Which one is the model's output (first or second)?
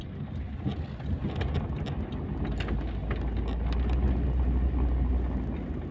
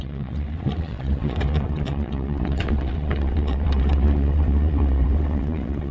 second